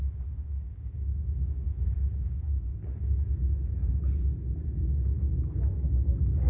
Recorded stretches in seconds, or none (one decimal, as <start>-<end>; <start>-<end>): 2.7-4.8